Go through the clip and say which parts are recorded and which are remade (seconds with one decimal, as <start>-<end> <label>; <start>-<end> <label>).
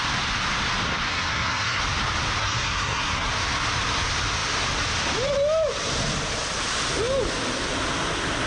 0.0-1.1 recorded; 1.1-1.8 remade; 1.8-2.4 recorded; 2.4-3.3 remade; 3.3-8.5 recorded